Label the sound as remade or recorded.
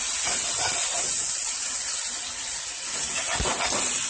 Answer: recorded